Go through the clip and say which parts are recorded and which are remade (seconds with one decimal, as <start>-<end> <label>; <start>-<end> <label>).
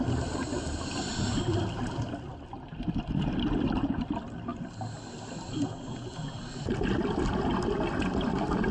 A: 0.0-1.1 recorded; 1.1-1.6 remade; 1.6-2.3 recorded; 2.3-3.1 remade; 3.1-8.7 recorded